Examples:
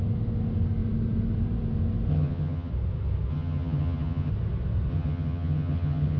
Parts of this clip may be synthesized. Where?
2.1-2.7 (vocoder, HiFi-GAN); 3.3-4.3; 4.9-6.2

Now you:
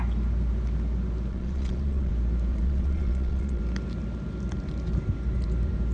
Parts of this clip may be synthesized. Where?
1.3-2.1 (vocoder, Vocos); 2.5-3.6

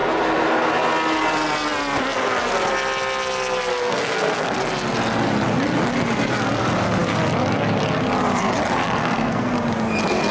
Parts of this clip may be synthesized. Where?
3.7-4.6 (codec, SNAC); 9.0-9.5

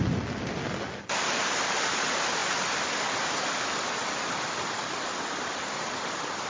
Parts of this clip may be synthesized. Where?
none

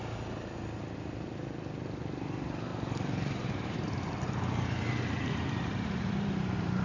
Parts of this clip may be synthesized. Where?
2.7-6.8 (vocoder, BigVGAN v2)

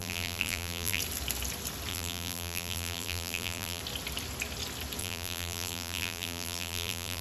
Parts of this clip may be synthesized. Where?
0.0-1.0 (vocoder, BigVGAN v2); 1.9-3.8; 5.0-7.2

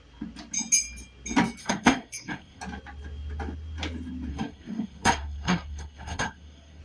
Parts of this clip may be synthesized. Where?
1.6-2.6 (codec, SNAC); 4.3-6.8

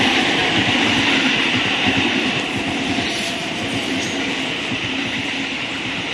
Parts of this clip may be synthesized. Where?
3.4-4.9 (vocoder, BigVGAN v2)